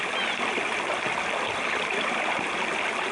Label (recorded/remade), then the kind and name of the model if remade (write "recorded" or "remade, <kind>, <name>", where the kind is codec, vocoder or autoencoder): recorded